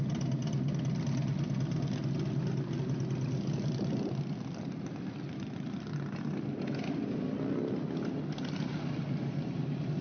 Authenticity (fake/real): real